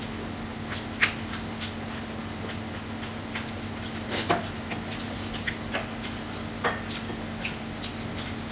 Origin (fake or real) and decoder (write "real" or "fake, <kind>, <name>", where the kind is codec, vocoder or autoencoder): real